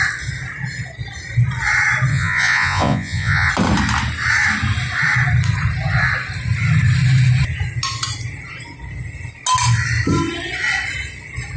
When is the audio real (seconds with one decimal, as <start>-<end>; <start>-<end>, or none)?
0.0-2.1; 3.5-11.6